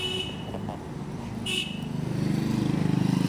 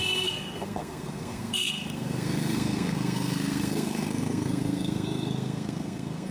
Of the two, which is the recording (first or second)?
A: first